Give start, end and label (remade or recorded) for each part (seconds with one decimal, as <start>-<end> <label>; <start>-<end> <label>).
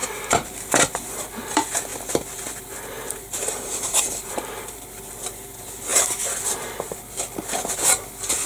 0.0-8.5 remade